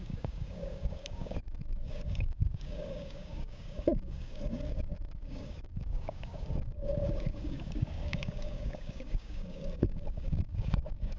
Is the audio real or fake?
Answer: fake